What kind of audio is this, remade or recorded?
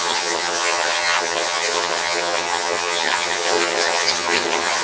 remade